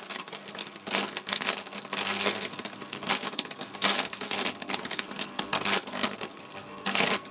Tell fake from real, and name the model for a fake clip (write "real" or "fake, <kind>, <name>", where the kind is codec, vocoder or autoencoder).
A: fake, codec, SNAC